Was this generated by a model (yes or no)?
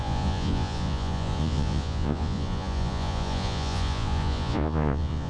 yes